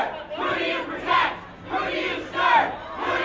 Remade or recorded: recorded